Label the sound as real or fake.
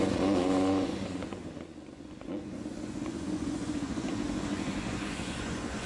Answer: fake